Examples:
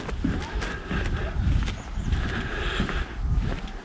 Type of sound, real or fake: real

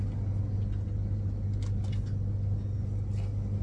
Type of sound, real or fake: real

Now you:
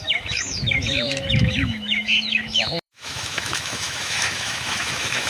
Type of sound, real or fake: fake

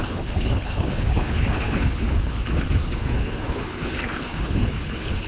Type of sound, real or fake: fake